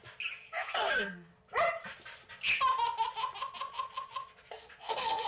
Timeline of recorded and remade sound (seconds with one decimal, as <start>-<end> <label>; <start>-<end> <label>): 0.0-0.5 recorded; 0.5-1.3 remade; 1.3-4.5 recorded; 4.5-5.3 remade